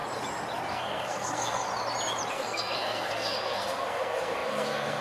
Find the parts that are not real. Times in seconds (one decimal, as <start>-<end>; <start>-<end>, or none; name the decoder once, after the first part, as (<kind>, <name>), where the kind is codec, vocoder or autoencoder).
0.7-1.7 (codec, SNAC); 2.3-5.0